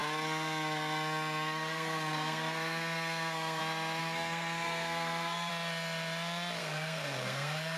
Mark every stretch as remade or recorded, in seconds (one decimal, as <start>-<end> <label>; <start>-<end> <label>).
0.0-3.6 remade; 3.6-4.0 recorded; 4.0-5.5 remade; 5.5-6.6 recorded; 6.6-7.8 remade